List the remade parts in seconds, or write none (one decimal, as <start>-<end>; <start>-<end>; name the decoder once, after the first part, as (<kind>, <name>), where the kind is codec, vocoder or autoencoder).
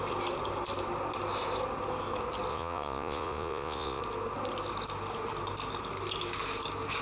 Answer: 2.5-4.0 (vocoder, Vocos)